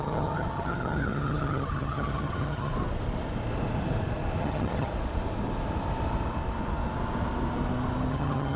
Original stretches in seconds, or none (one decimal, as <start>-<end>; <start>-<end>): 2.7-4.4; 4.9-8.1